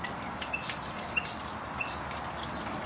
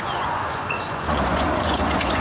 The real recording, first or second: first